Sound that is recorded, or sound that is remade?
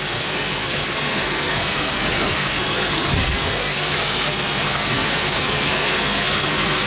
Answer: remade